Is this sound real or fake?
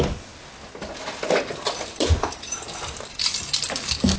real